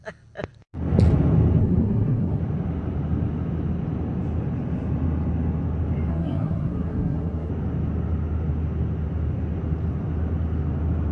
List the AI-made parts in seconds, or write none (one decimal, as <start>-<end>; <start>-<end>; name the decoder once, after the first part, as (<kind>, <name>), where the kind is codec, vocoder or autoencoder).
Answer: 1.6-2.4 (codec, SNAC); 6.1-7.5